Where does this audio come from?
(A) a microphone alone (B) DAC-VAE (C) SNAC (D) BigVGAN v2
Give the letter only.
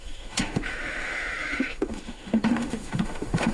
B